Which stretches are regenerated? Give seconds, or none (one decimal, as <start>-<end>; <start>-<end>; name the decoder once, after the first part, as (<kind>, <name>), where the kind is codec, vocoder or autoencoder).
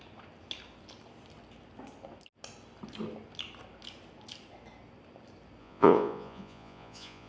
5.6-7.3 (vocoder, Vocos)